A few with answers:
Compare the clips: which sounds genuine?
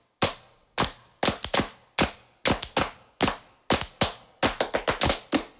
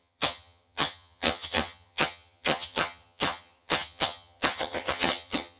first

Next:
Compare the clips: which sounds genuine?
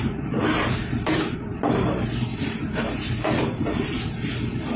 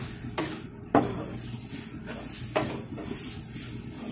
second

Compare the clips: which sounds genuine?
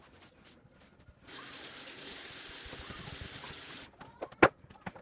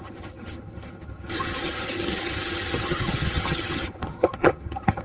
first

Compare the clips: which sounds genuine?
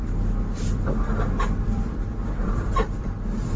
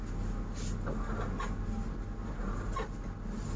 second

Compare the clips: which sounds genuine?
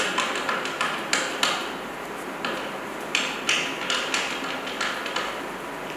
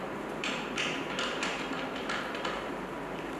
first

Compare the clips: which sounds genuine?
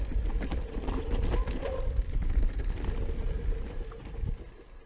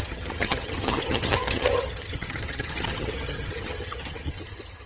first